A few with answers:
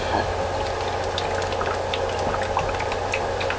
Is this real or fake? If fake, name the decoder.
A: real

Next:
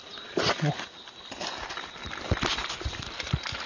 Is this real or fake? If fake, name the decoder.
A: real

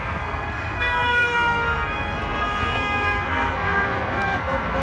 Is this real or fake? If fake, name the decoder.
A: fake, codec, SNAC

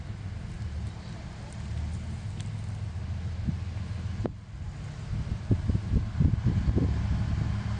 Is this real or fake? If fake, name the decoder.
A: real